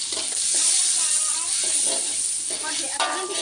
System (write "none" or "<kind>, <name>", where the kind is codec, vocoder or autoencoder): none